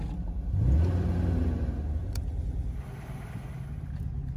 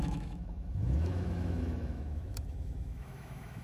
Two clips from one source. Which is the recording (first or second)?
first